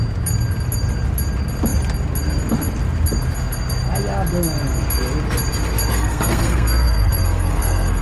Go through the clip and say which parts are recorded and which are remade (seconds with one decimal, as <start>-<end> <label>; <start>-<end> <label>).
0.0-5.9 recorded; 5.9-8.0 remade